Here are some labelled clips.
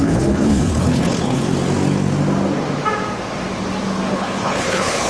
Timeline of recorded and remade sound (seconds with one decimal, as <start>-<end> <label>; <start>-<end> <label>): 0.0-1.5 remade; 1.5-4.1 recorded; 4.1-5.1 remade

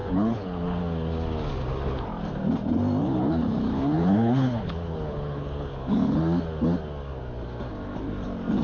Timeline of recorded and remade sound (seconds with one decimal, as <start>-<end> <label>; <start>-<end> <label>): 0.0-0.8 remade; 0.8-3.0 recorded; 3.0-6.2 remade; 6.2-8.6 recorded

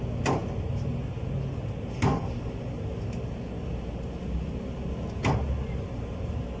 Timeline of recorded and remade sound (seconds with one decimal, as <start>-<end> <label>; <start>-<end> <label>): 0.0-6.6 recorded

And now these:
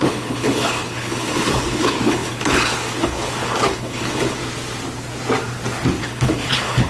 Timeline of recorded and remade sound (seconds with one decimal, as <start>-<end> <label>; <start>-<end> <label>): 0.0-4.4 remade; 4.4-6.0 recorded; 6.0-6.9 remade

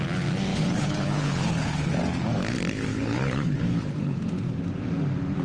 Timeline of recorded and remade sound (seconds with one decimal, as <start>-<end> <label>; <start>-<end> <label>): 0.0-0.5 recorded; 0.5-2.0 remade; 2.0-2.9 recorded; 2.9-4.2 remade; 4.2-5.4 recorded